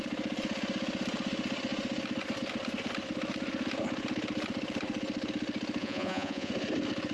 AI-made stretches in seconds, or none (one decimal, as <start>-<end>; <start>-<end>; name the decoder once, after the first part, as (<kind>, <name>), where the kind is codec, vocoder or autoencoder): 5.8-6.5 (vocoder, Vocos)